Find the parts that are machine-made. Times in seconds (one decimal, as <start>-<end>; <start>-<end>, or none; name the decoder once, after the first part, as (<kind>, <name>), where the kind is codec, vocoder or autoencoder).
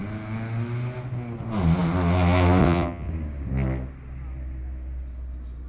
2.6-3.1 (vocoder, WaveNeXt)